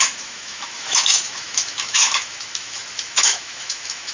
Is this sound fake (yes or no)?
yes